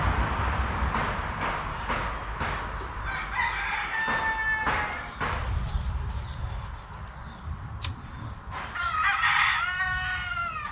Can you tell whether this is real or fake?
real